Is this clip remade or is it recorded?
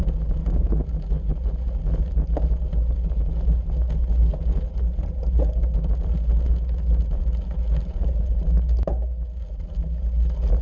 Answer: recorded